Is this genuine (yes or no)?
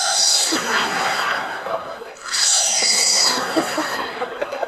no